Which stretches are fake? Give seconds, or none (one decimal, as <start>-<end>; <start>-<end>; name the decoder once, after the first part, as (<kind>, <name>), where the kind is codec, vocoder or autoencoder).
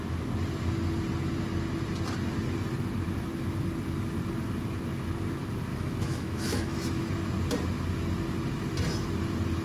5.7-7.1 (autoencoder, DAC-VAE)